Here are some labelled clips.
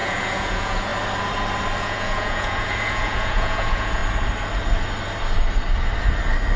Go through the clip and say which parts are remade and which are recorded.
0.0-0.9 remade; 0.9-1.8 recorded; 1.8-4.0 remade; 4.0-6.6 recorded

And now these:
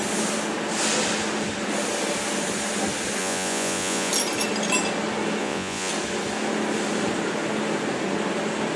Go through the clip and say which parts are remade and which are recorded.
0.0-3.2 recorded; 3.2-4.1 remade; 4.1-5.4 recorded; 5.4-5.9 remade; 5.9-8.8 recorded

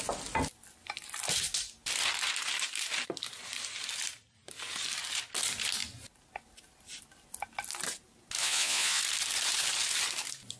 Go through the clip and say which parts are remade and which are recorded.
0.0-8.4 recorded; 8.4-9.0 remade; 9.0-10.6 recorded

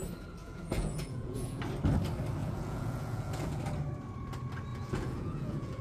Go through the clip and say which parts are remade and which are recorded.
0.0-0.4 recorded; 0.4-1.6 remade; 1.6-2.4 recorded; 2.4-3.6 remade; 3.6-4.7 recorded; 4.7-5.8 remade

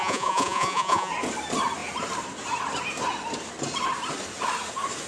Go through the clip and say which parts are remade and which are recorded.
0.0-1.1 remade; 1.1-5.1 recorded

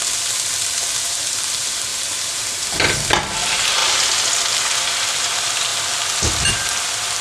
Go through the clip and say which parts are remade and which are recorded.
0.0-7.2 recorded